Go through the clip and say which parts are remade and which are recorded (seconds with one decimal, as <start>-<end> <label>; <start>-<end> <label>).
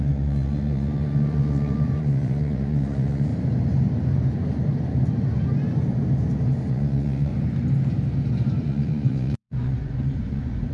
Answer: 0.0-3.3 remade; 3.3-6.7 recorded; 6.7-7.3 remade; 7.3-8.6 recorded; 8.6-10.7 remade